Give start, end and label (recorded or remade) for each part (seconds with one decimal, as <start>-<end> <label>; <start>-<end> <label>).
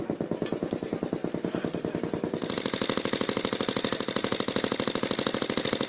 0.0-5.9 recorded